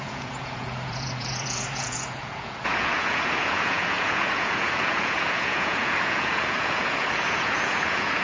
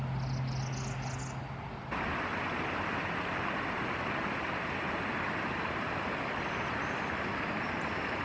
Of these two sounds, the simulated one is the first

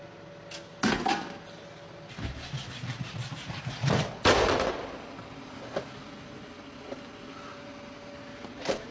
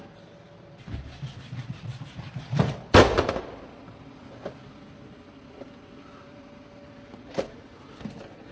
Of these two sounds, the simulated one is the second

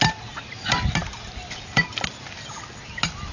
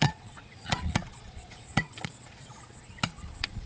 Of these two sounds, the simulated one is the second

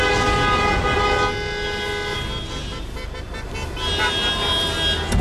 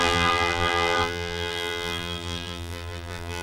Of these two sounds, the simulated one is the second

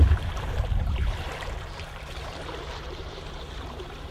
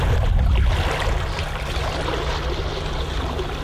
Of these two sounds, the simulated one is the first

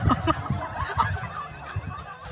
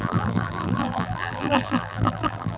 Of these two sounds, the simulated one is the second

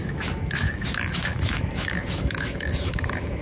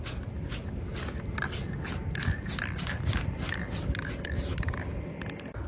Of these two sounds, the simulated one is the first